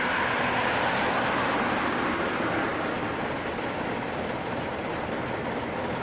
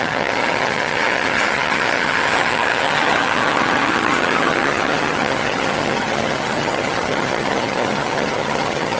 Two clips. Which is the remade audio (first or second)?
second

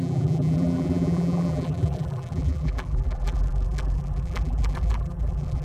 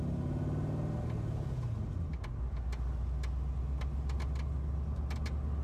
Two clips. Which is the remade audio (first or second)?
first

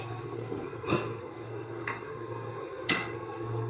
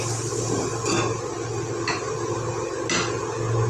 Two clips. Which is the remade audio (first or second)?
first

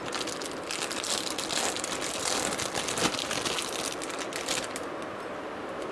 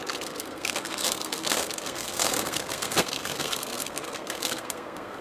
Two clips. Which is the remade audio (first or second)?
second